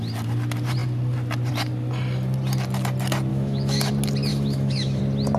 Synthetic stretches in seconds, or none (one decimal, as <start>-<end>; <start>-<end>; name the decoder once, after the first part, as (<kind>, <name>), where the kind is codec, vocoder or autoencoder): 3.3-3.9 (autoencoder, DAC-VAE); 4.3-5.0